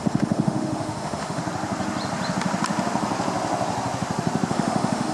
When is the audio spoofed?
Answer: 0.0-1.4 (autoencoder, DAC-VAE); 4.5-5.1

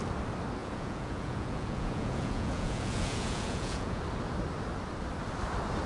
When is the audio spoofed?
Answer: 0.6-4.0 (vocoder, Vocos)

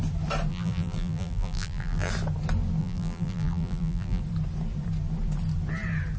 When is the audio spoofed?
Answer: 0.5-2.1 (vocoder, BigVGAN v2); 2.8-4.2

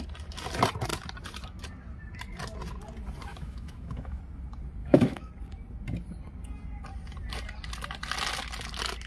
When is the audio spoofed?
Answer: 3.3-4.2 (autoencoder, DAC-VAE); 4.8-5.3

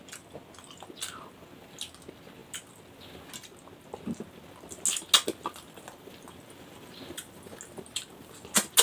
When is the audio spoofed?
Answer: none